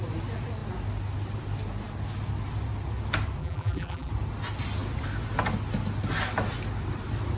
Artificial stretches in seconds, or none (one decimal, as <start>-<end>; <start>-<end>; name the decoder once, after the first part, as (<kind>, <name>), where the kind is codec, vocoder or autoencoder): 3.4-4.1 (vocoder, BigVGAN v2)